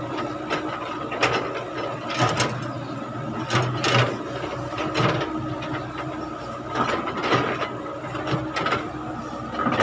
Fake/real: real